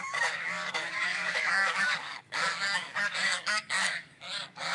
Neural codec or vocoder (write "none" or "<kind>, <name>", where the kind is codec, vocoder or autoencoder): codec, DAC